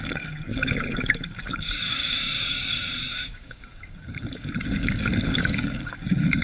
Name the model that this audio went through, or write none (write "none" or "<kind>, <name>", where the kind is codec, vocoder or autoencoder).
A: codec, DAC